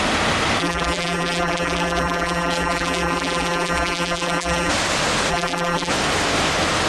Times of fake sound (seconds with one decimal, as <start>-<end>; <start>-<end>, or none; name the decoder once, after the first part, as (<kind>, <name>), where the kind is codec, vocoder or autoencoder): 0.6-4.7 (vocoder, BigVGAN v2); 5.3-5.9